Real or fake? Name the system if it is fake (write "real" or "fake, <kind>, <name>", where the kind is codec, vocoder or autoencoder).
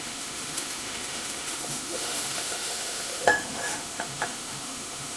fake, autoencoder, DAC-VAE